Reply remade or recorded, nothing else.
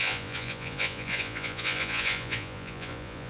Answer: remade